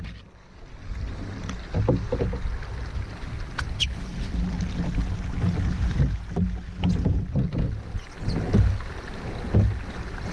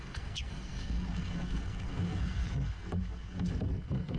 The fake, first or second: second